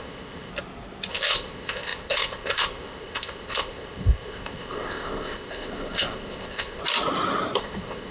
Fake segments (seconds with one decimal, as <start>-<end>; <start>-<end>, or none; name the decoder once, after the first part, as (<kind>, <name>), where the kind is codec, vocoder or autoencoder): 0.0-0.5 (codec, ZipCodec); 1.1-6.8; 7.6-8.1